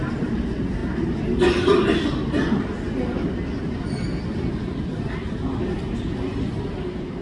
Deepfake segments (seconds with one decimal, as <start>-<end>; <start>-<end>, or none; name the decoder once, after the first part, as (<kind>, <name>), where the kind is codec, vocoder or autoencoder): none